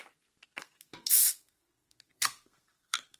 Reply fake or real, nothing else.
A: fake